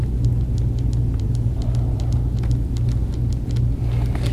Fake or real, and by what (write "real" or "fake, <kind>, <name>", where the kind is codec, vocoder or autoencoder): real